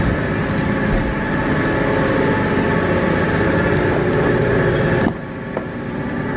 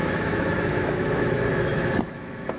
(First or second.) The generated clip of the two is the second